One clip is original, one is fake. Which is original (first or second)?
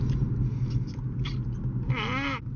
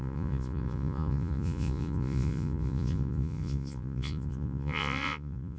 first